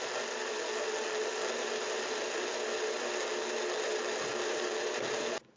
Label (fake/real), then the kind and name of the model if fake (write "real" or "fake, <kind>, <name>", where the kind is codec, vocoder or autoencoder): real